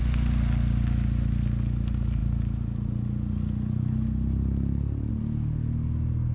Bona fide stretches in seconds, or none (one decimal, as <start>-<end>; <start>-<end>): 0.0-6.3